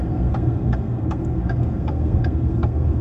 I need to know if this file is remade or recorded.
remade